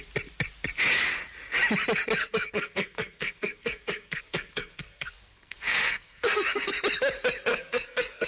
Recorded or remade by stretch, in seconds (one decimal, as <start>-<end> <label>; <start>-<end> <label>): 0.0-2.2 recorded; 2.2-6.7 remade; 6.7-7.5 recorded; 7.5-8.3 remade